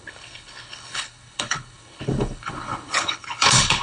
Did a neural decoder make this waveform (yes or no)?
yes